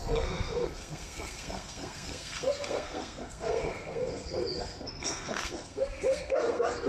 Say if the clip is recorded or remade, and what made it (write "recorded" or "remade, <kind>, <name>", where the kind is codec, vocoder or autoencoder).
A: remade, codec, SNAC